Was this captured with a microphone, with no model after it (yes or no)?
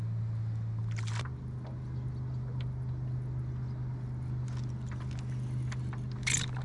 yes